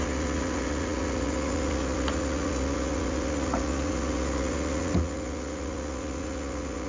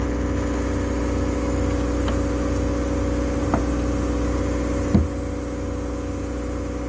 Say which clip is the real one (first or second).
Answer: second